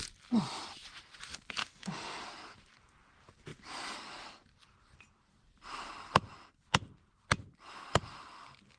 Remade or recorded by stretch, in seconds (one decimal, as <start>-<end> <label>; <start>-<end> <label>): 0.0-1.6 recorded; 1.6-2.2 remade; 2.2-8.8 recorded